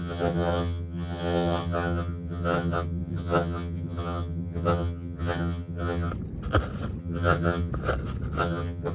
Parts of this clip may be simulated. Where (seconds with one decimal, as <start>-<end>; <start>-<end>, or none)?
0.0-6.1; 7.0-7.7; 8.4-8.9